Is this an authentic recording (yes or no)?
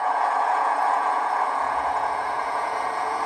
no